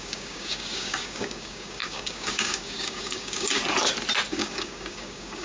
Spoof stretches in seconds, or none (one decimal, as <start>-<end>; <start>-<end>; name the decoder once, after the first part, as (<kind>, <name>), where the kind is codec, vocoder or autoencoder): 0.0-3.6 (codec, DAC); 4.3-5.4